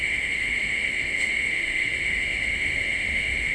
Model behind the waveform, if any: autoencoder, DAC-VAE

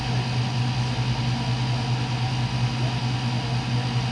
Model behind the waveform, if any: none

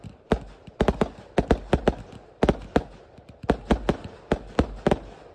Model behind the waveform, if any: none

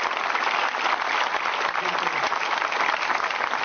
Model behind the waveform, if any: none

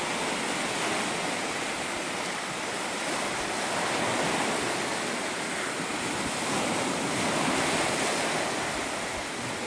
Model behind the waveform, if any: none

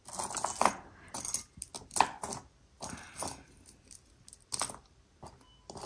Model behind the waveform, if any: none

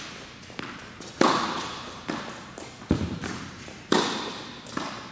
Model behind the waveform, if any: none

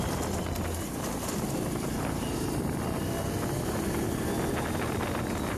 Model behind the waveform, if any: none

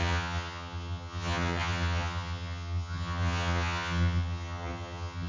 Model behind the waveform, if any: vocoder, HiFi-GAN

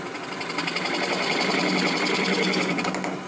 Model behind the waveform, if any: none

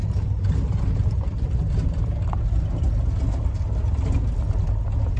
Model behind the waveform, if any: none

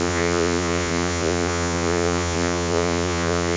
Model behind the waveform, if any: vocoder, Vocos